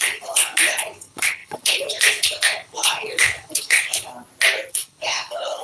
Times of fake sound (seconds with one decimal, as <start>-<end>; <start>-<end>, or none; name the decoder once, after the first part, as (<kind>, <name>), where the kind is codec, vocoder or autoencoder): 0.0-4.1 (codec, HILCodec); 4.7-5.6